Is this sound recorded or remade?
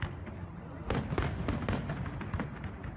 recorded